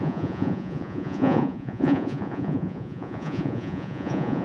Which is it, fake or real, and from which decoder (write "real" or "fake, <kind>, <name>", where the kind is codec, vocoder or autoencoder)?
fake, vocoder, Vocos